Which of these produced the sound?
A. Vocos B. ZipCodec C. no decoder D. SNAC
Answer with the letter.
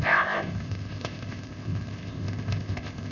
B